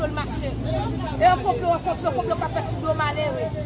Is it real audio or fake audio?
real